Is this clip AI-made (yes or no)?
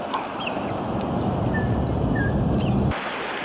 no